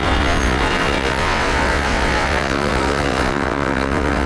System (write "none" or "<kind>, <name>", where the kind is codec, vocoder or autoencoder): vocoder, WaveNeXt